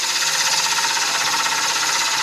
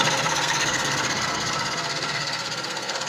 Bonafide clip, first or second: first